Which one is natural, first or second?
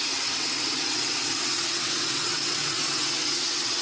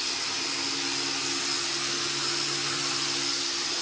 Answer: second